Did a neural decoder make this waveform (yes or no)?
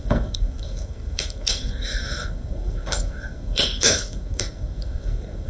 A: yes